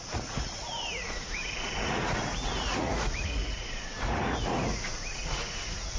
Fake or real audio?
fake